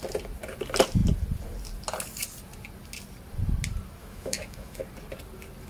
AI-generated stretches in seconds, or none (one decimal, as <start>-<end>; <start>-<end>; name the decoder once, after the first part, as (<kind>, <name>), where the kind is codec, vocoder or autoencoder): 4.0-4.8 (autoencoder, DAC-VAE)